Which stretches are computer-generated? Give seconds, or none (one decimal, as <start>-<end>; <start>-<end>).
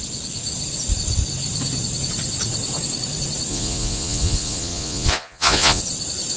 3.5-5.8